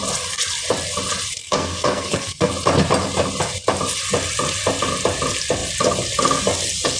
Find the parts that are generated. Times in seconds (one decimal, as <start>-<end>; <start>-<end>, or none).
1.4-2.5